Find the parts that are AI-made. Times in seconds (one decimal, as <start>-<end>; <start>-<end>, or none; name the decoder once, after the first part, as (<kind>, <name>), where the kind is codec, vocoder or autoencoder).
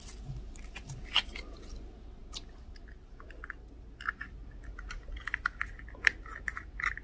none